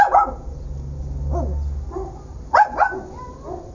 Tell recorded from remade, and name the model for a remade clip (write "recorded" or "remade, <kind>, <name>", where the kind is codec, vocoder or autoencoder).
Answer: recorded